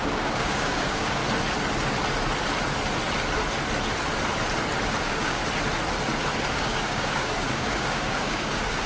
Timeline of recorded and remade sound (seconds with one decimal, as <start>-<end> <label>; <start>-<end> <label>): 0.0-1.2 remade; 1.2-5.0 recorded; 5.0-5.4 remade; 5.4-6.5 recorded; 6.5-8.9 remade